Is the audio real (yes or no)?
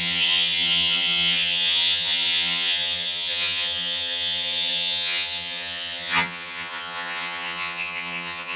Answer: no